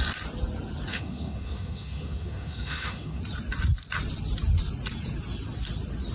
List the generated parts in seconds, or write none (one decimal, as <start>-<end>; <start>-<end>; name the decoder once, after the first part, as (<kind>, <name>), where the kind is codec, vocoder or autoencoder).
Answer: 0.9-3.2 (autoencoder, DAC-VAE)